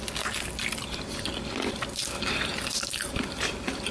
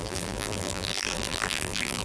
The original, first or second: first